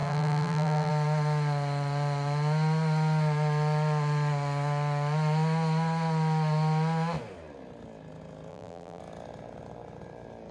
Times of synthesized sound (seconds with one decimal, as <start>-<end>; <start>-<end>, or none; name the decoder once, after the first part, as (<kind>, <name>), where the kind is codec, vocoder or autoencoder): 0.0-0.9 (vocoder, BigVGAN v2); 8.5-9.0